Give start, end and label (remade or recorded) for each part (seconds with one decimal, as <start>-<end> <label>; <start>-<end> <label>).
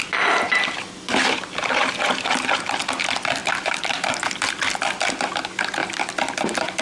0.0-3.4 recorded; 3.4-4.4 remade; 4.4-6.8 recorded